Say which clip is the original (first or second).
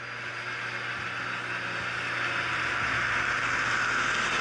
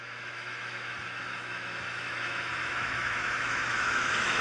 first